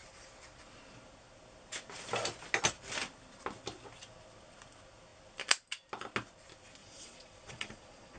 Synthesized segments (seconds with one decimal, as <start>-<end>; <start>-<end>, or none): 6.8-8.2